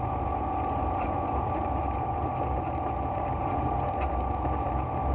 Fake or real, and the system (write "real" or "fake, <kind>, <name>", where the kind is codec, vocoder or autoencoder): fake, vocoder, BigVGAN v2